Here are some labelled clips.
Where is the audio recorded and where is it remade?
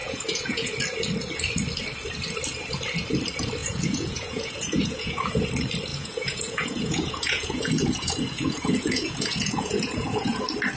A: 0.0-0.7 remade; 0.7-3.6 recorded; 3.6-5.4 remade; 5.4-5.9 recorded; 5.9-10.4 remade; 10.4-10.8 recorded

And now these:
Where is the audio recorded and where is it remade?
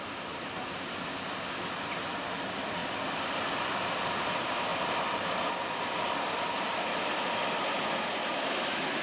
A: 0.0-9.0 recorded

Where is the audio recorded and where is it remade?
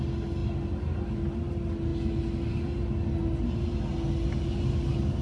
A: 0.0-5.2 recorded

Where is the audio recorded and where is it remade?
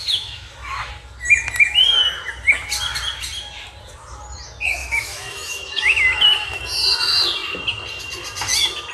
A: 0.0-0.9 remade; 0.9-4.8 recorded; 4.8-6.6 remade; 6.6-8.9 recorded